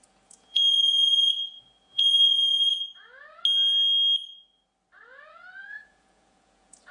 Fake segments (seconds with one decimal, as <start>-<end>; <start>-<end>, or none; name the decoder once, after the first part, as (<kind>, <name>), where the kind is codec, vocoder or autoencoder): 0.0-2.7 (vocoder, Vocos); 5.7-6.9

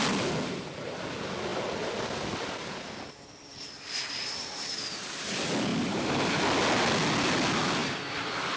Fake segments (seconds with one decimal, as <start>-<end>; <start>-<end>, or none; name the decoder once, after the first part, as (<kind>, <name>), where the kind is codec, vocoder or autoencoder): 5.7-6.4 (vocoder, BigVGAN v2); 7.8-8.6